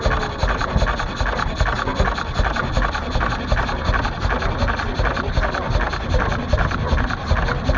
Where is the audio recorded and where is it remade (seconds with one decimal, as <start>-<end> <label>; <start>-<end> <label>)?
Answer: 0.0-2.6 recorded; 2.6-3.9 remade; 3.9-7.8 recorded